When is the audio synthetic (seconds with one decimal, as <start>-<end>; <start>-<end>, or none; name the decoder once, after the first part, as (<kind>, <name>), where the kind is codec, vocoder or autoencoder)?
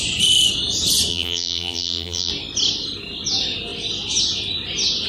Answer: 1.1-2.3 (vocoder, BigVGAN v2)